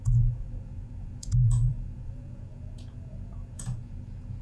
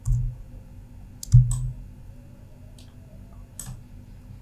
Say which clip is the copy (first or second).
first